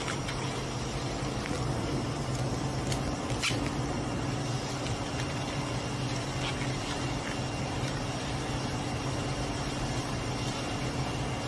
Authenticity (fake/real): real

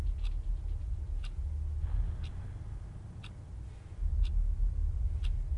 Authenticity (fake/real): real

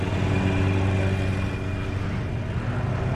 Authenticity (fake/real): real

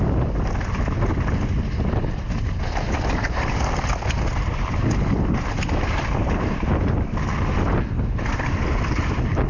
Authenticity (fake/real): real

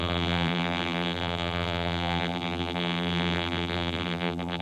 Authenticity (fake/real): fake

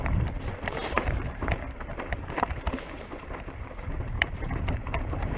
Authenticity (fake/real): fake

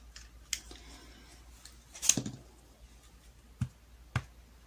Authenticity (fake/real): real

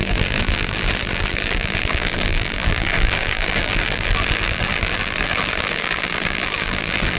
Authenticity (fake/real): fake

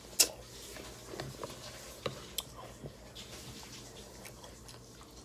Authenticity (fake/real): real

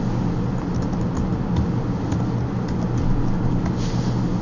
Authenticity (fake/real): real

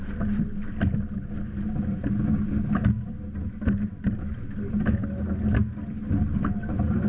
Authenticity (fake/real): real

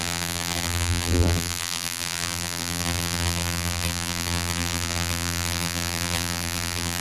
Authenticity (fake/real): fake